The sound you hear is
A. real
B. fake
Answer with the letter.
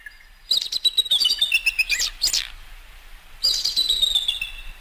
A